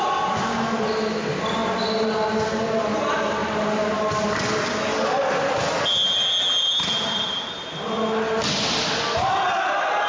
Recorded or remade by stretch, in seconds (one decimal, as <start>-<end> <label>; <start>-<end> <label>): 0.0-10.1 recorded